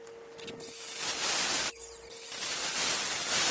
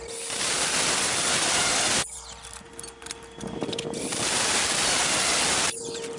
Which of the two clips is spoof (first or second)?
second